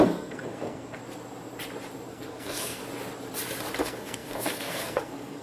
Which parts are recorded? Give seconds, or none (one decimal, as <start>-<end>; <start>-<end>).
1.0-2.1; 2.8-3.8